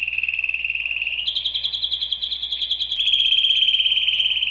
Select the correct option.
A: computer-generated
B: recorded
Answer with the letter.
B